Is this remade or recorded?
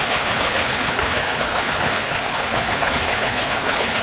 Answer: remade